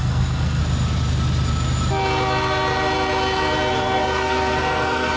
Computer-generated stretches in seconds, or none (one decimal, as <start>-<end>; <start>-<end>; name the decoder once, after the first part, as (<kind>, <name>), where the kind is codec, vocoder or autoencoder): 0.0-0.6 (codec, SNAC); 3.7-5.2